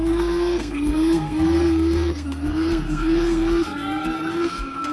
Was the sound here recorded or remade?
remade